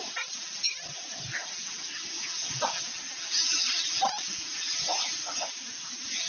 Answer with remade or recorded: recorded